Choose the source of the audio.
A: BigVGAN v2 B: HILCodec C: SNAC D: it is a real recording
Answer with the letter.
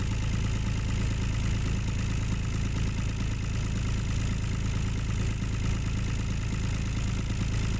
D